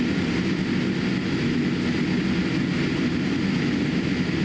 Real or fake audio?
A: real